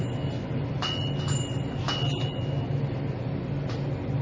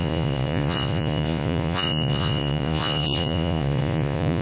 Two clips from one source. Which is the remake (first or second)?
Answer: second